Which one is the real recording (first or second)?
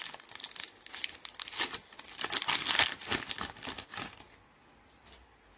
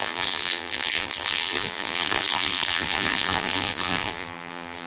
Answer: first